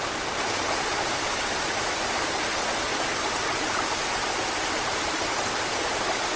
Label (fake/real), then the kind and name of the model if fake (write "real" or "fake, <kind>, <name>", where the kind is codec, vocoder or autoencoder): real